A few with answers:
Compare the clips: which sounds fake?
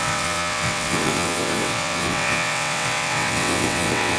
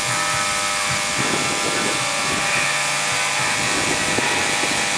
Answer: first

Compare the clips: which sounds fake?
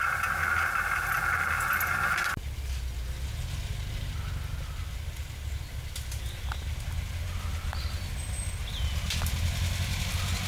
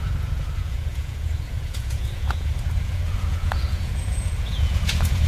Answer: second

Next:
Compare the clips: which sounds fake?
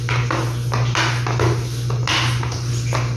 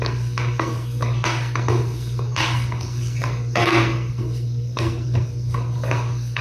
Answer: second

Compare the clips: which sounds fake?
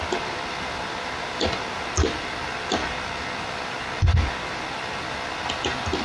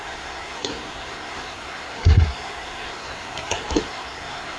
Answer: second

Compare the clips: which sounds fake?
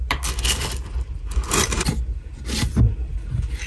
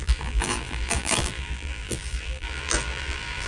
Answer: second